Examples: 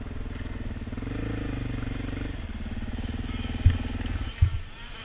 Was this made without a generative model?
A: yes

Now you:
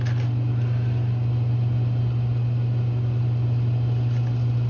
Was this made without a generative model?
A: yes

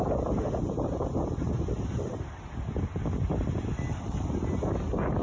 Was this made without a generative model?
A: yes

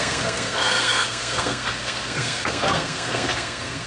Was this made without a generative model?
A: no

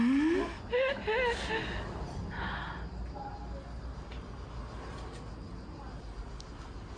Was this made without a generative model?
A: yes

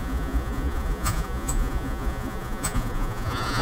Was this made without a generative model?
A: no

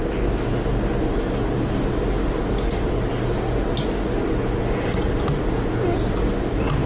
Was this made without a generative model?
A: yes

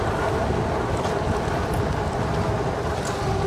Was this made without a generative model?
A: yes